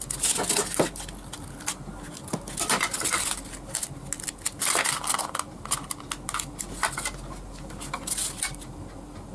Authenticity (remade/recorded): recorded